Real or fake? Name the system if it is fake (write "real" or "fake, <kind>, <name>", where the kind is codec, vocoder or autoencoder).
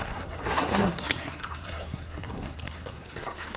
fake, codec, SNAC